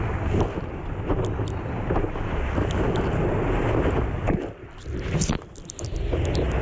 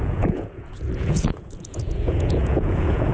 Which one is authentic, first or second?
first